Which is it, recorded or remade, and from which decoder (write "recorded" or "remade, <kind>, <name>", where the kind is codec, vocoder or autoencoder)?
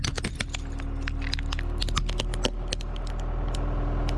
recorded